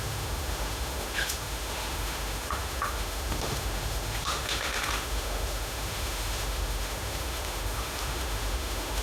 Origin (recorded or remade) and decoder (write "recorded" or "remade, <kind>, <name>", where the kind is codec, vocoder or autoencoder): remade, autoencoder, DAC-VAE